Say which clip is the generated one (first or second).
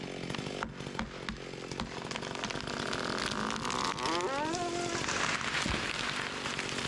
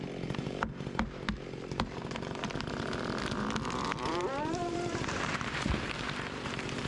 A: second